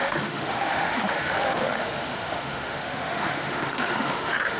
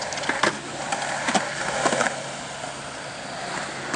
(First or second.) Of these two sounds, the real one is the second